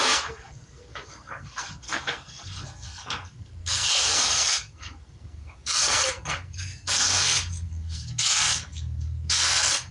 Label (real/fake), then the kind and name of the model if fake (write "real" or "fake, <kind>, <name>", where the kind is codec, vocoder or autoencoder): fake, codec, SNAC